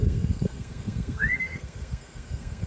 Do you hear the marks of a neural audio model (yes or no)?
yes